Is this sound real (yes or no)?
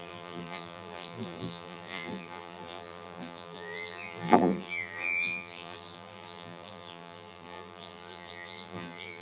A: no